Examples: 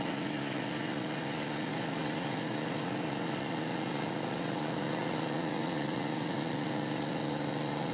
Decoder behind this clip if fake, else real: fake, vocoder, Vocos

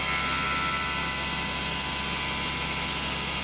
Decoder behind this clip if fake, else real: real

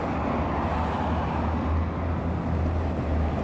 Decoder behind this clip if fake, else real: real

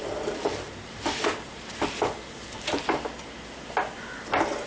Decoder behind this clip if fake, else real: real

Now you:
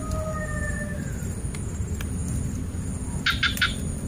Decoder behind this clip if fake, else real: real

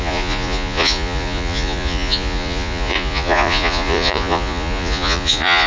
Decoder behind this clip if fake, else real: fake, vocoder, Vocos